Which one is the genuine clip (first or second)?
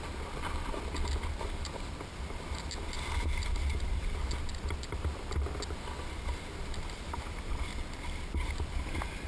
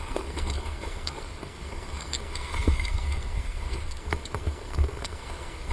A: first